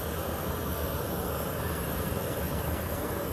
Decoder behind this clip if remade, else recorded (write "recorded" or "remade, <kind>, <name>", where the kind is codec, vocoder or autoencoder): remade, codec, SNAC